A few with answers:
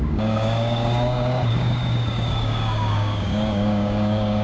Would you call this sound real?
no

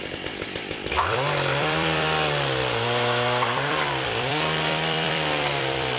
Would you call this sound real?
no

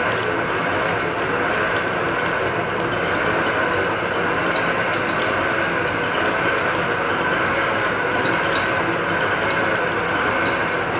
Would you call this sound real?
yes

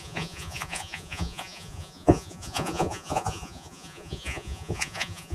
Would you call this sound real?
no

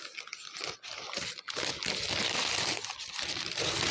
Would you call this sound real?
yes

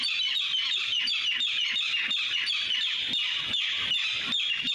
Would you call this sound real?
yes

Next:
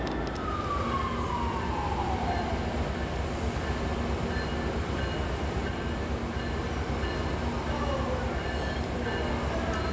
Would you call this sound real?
yes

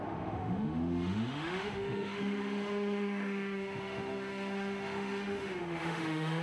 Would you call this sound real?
no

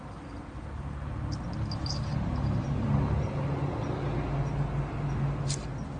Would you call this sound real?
yes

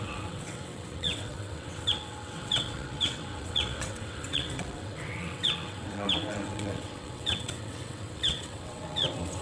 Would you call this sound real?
no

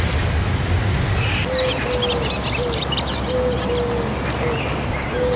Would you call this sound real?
yes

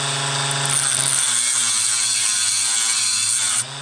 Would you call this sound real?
yes